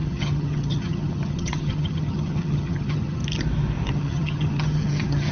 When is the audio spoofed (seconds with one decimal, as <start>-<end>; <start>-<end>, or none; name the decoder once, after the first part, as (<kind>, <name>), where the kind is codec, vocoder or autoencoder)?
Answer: 0.0-3.2 (vocoder, HiFi-GAN); 3.9-5.3